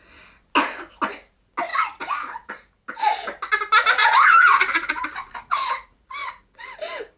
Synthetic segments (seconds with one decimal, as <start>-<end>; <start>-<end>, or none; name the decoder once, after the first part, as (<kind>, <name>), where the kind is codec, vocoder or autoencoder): 1.7-2.5 (vocoder, Vocos); 4.0-6.8